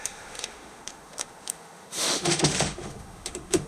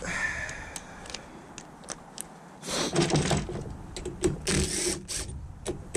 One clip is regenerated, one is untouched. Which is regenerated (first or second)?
first